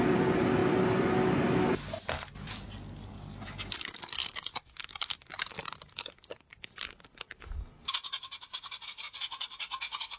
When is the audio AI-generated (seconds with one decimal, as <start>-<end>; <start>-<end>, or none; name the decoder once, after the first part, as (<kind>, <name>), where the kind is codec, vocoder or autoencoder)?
none